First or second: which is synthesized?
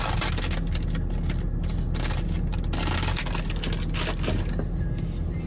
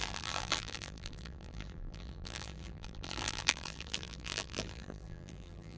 second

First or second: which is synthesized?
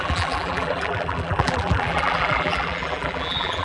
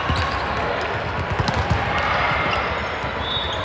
first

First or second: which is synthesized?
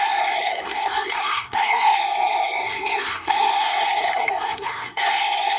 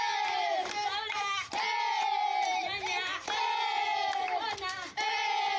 first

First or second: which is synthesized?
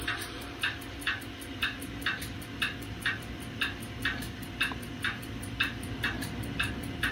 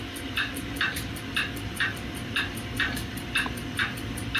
second